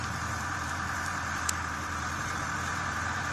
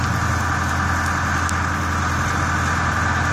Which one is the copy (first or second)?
first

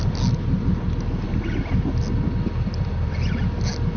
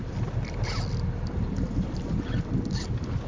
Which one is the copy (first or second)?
second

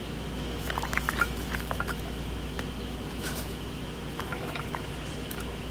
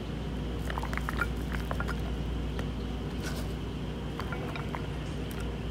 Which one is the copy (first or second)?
first